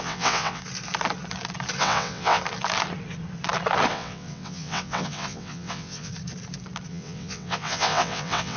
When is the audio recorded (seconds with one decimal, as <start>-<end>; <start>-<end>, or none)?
0.6-1.8; 2.4-3.9; 6.1-6.9